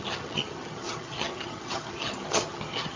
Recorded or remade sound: remade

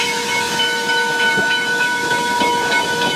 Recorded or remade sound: remade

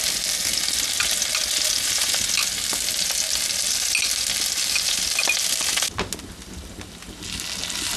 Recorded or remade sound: recorded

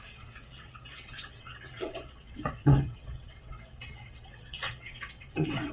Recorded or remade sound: remade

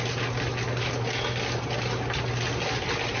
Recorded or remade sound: recorded